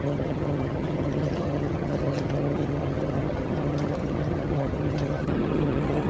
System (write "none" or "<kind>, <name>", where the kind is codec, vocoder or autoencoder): vocoder, HiFi-GAN